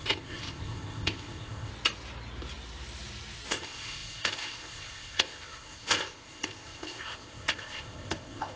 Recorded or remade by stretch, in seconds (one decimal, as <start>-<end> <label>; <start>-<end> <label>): 0.0-1.7 remade; 1.7-3.5 recorded; 3.5-8.6 remade